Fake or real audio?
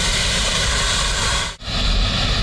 real